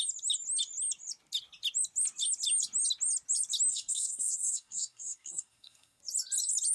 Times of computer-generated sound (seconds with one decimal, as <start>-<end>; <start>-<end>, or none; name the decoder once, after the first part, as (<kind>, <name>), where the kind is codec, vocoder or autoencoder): 3.7-6.0 (codec, SNAC)